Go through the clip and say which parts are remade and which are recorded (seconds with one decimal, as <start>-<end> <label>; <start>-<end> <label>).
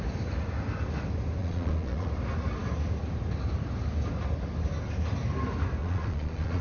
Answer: 0.0-1.4 recorded; 1.4-2.1 remade; 2.1-5.8 recorded; 5.8-6.6 remade